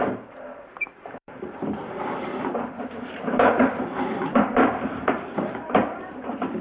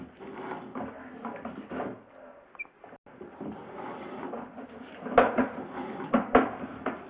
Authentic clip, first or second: second